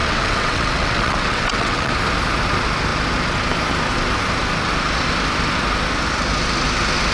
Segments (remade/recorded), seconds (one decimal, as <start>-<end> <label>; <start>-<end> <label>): 0.0-1.9 remade; 1.9-7.1 recorded